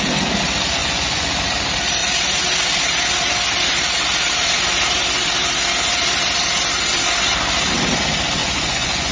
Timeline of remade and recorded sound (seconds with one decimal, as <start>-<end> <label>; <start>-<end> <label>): 0.0-0.8 recorded; 0.8-1.3 remade; 1.3-8.4 recorded; 8.4-9.1 remade